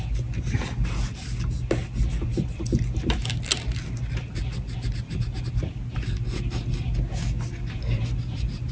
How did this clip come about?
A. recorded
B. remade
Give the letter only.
A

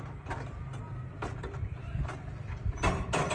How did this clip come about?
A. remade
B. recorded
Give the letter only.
A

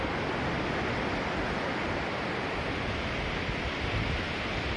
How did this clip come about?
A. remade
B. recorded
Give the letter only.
B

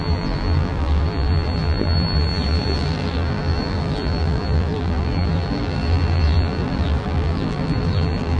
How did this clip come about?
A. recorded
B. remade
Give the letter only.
B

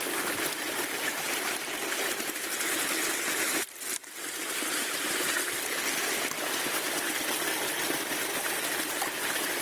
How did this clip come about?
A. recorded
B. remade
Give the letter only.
A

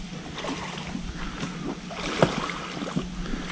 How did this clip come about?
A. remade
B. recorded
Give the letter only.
B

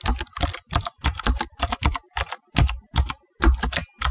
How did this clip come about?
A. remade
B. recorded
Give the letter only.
B